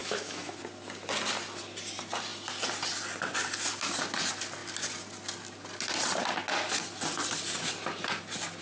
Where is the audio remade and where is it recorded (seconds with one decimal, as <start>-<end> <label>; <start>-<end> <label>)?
0.0-0.6 remade; 0.6-8.6 recorded